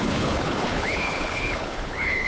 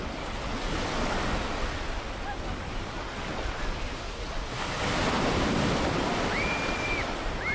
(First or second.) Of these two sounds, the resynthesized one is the first